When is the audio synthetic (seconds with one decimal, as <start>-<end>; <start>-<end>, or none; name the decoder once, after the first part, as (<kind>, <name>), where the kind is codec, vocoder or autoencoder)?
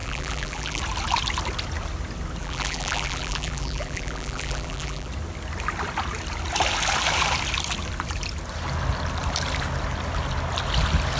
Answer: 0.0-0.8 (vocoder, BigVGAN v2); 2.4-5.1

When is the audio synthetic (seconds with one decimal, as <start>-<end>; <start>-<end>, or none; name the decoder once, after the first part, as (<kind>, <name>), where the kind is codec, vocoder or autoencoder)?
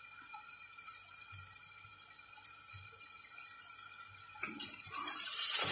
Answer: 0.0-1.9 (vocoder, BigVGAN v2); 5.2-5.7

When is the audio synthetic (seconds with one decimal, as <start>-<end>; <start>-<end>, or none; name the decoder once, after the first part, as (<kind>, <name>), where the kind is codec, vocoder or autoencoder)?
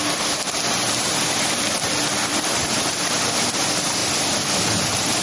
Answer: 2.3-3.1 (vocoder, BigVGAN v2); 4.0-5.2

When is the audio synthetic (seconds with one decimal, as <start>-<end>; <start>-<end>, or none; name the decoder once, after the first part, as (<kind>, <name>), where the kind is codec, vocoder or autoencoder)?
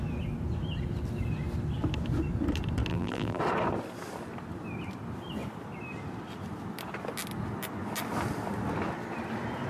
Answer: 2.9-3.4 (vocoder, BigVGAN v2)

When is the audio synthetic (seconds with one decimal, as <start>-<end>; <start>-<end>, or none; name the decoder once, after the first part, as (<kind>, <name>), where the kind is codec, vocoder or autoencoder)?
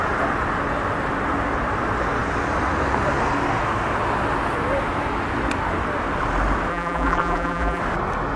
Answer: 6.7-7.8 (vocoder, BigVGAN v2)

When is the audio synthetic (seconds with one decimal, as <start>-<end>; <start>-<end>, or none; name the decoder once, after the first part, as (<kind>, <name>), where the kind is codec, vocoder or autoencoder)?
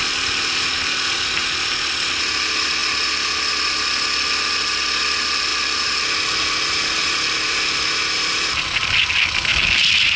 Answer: none